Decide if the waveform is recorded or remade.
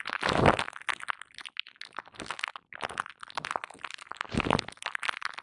recorded